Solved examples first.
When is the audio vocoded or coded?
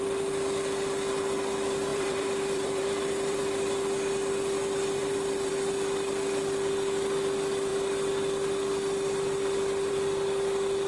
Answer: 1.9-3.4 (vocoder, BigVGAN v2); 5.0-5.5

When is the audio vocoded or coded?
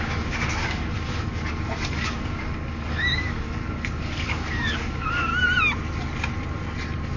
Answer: 0.0-5.3 (codec, DAC)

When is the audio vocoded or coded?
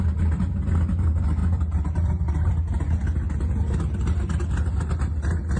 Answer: none